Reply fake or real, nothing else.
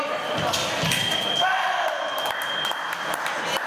real